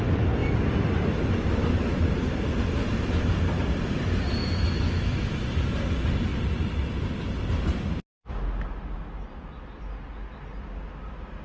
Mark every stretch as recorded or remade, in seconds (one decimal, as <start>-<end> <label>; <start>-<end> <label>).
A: 0.0-4.4 recorded; 4.4-5.3 remade; 5.3-11.4 recorded